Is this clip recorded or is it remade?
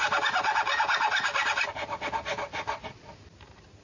recorded